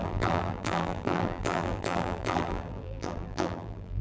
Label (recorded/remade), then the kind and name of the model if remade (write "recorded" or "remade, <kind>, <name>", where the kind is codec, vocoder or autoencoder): remade, vocoder, BigVGAN v2